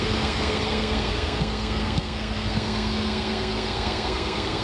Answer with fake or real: fake